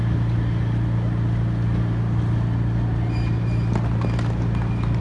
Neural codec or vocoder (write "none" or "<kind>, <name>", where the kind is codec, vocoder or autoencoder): none